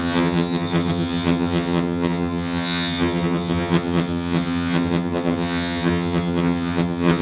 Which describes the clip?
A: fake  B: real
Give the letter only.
A